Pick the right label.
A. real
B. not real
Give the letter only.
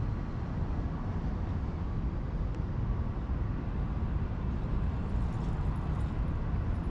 A